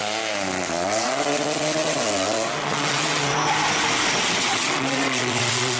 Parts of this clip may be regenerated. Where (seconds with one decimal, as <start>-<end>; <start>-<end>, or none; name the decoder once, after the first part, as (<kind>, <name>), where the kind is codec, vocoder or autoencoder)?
0.7-3.3 (vocoder, WaveNeXt); 4.3-5.8